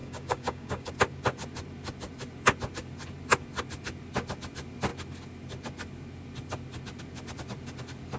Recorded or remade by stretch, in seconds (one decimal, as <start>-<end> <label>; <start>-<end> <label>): 0.0-0.9 remade; 0.9-8.2 recorded